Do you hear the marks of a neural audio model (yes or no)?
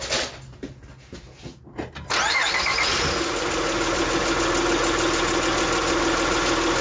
no